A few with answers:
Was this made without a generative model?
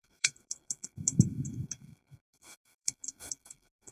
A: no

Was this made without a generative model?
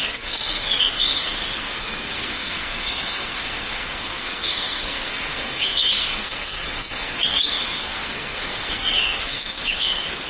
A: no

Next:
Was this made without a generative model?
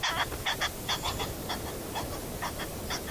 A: yes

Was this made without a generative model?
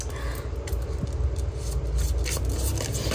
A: yes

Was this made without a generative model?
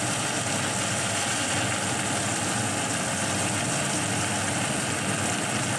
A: yes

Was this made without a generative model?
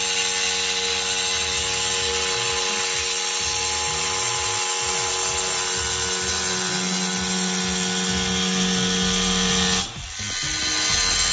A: yes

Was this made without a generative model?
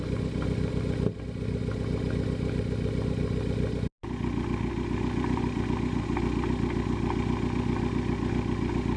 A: yes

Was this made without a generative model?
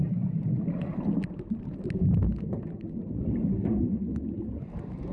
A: yes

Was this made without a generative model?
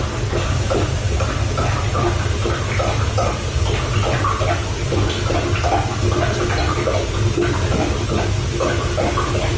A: yes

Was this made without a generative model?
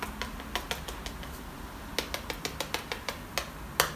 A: yes